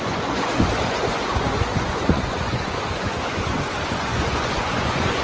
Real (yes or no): no